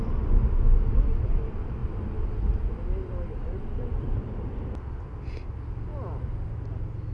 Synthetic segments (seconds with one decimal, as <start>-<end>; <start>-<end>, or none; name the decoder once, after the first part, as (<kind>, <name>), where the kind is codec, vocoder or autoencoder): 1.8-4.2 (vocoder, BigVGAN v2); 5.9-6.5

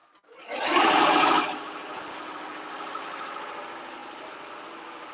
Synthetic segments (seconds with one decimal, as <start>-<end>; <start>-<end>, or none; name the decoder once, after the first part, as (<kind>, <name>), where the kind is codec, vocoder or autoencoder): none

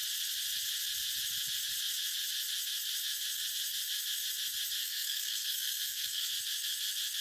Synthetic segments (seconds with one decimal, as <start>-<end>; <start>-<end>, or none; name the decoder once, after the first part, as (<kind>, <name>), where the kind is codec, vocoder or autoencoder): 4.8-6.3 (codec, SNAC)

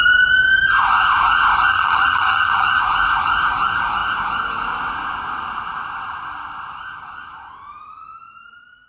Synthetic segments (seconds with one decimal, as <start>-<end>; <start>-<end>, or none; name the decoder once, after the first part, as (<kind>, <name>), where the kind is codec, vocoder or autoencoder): 1.7-2.8 (vocoder, HiFi-GAN)

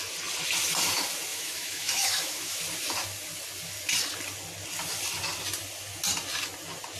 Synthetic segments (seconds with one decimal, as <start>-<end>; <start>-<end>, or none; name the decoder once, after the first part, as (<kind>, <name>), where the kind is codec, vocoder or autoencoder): 1.3-2.6 (autoencoder, DAC-VAE)